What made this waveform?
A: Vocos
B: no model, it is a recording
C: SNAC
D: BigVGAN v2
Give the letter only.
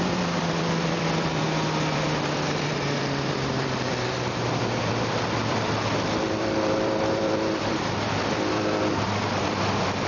D